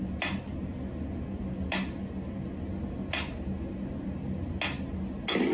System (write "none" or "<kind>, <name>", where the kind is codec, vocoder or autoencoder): none